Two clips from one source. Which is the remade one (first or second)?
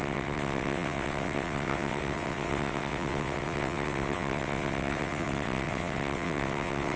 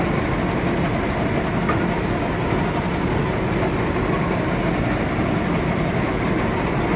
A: first